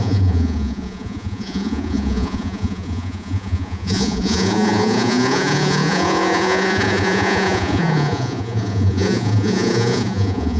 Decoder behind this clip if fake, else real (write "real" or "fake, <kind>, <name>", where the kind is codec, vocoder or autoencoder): fake, vocoder, Vocos